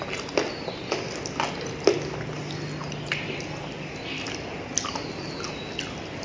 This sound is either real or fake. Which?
real